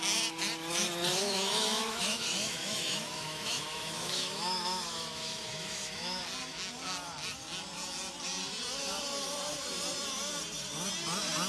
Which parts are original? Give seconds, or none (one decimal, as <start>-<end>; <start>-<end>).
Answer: 0.0-1.1; 6.2-11.5